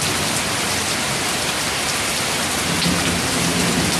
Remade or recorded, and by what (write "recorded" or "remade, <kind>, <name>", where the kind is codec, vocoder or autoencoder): recorded